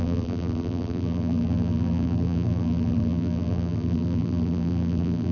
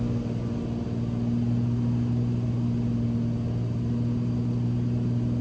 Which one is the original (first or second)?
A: second